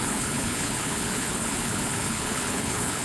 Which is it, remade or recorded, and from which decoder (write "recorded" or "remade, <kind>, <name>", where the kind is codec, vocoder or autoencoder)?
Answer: remade, codec, HILCodec